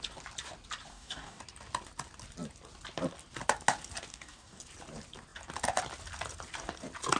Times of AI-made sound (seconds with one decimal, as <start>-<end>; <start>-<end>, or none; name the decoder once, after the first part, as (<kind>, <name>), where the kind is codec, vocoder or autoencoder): 0.9-1.4 (codec, DAC); 4.1-4.6